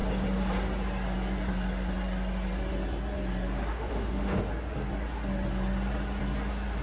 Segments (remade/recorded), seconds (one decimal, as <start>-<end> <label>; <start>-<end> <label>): 0.0-3.7 recorded; 3.7-4.4 remade; 4.4-6.8 recorded